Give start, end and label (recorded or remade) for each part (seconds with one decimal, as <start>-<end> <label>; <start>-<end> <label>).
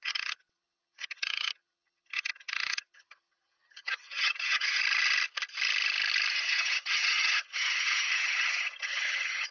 0.0-4.8 remade; 4.8-6.3 recorded; 6.3-9.5 remade